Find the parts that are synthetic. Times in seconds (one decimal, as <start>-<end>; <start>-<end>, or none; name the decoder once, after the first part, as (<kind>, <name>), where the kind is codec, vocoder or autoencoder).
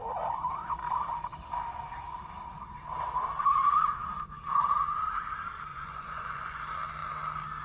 5.7-6.6 (vocoder, Vocos)